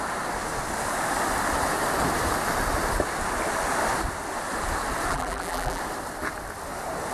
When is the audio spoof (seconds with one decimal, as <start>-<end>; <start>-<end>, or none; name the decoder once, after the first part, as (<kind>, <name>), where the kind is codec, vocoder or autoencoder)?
5.1-5.8 (vocoder, BigVGAN v2)